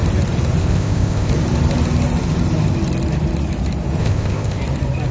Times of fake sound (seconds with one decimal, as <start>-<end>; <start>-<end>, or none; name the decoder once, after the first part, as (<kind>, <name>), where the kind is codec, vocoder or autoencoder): 0.6-1.3 (codec, ZipCodec); 4.0-4.6